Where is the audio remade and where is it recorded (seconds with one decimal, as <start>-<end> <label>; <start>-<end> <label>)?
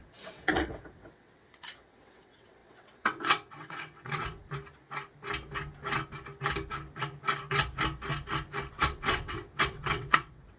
0.0-4.4 remade; 4.4-8.7 recorded; 8.7-10.6 remade